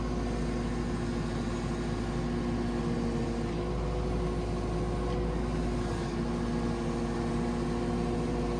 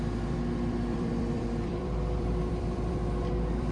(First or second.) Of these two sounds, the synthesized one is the second